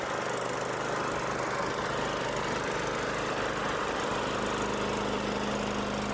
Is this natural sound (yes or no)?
yes